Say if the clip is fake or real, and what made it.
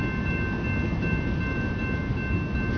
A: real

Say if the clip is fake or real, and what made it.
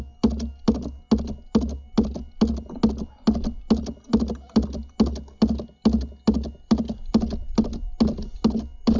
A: real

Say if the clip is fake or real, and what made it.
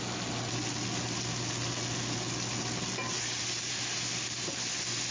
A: real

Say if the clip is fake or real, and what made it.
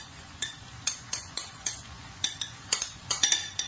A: fake, vocoder, Vocos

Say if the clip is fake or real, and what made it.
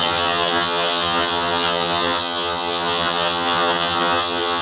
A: fake, vocoder, HiFi-GAN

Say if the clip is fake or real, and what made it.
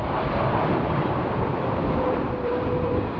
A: fake, vocoder, BigVGAN v2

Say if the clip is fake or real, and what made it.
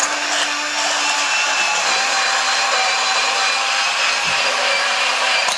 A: real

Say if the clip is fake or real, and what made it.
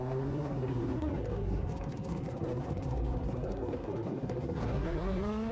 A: fake, codec, SNAC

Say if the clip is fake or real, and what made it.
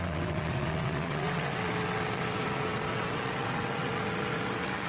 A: fake, vocoder, WaveNeXt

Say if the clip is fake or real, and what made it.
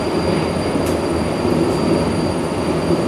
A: real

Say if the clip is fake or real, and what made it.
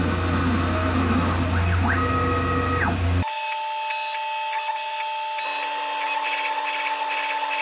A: real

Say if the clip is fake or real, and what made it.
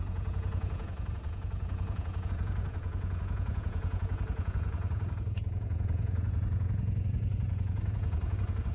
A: fake, vocoder, Vocos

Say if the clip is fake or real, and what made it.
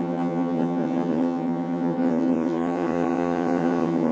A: fake, vocoder, HiFi-GAN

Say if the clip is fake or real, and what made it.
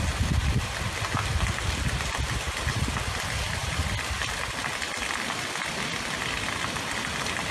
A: real